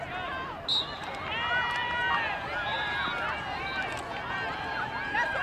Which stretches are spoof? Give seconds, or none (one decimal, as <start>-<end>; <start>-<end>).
none